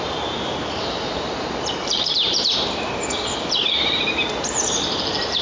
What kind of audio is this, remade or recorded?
remade